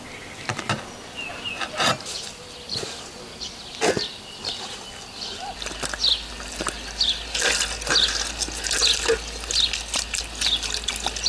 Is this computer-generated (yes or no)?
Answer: no